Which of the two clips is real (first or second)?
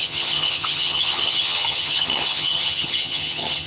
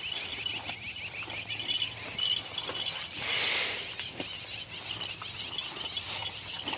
second